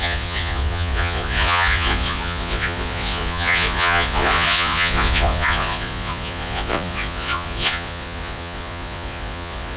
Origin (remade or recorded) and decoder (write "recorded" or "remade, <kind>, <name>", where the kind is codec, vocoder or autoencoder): remade, vocoder, Vocos